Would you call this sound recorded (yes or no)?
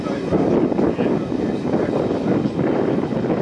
yes